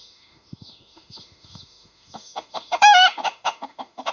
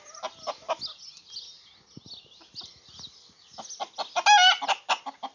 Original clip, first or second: second